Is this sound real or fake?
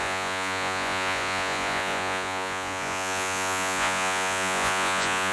fake